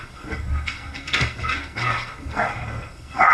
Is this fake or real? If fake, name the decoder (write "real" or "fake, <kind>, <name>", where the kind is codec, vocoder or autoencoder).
fake, codec, SNAC